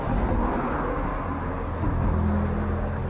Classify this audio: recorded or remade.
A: recorded